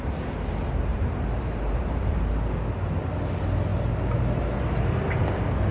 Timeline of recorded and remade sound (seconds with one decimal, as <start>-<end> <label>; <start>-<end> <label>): 0.0-0.9 recorded; 0.9-2.3 remade; 2.3-5.7 recorded